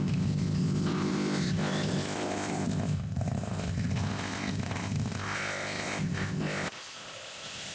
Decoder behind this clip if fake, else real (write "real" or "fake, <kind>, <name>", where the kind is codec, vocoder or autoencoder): fake, codec, ZipCodec